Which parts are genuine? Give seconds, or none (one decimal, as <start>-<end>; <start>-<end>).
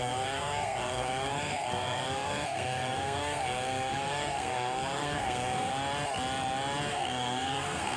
5.7-6.9